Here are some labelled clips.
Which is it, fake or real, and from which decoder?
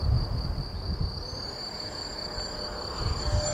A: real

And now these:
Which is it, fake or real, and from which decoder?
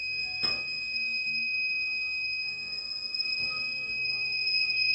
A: fake, codec, SNAC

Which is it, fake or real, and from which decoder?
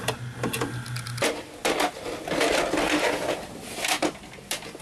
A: real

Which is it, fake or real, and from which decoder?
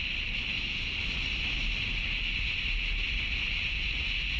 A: real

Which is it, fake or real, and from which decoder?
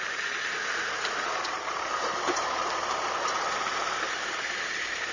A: fake, vocoder, BigVGAN v2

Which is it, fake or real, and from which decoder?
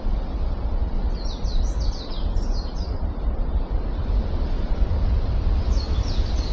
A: real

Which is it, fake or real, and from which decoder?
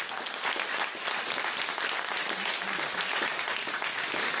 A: real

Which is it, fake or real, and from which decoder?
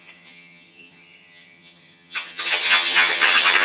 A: fake, vocoder, HiFi-GAN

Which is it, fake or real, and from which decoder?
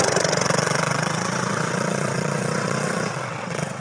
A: fake, vocoder, WaveNeXt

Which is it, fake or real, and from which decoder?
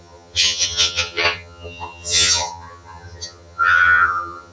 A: fake, vocoder, HiFi-GAN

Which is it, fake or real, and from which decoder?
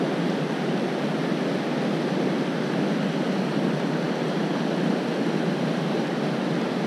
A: real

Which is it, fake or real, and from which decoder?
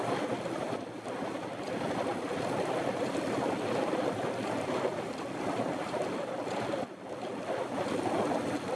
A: real